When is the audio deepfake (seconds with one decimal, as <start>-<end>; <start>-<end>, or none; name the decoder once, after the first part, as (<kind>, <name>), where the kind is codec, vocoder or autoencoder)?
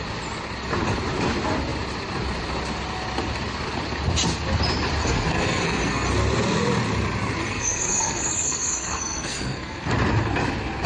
5.0-6.1 (codec, SNAC); 7.4-9.9